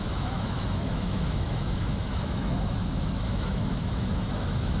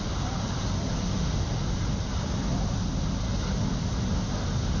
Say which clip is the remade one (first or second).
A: first